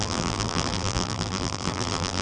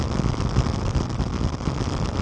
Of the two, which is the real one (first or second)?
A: second